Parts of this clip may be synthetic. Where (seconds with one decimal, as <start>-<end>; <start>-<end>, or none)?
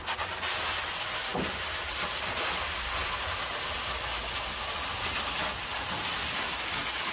none